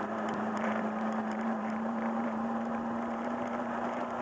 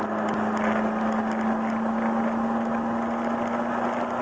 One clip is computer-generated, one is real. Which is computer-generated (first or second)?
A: first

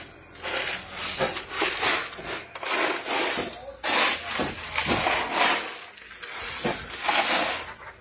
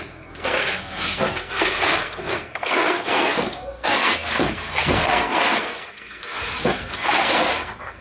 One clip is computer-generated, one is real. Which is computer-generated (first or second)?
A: second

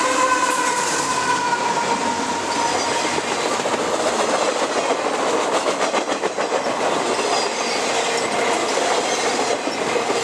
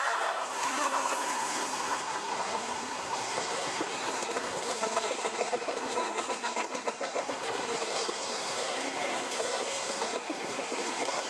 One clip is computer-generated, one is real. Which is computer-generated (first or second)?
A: second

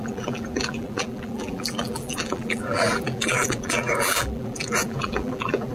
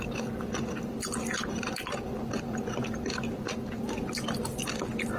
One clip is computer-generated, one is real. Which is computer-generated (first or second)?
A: first